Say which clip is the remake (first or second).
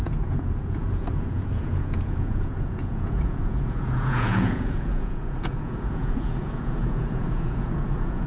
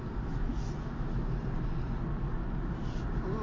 first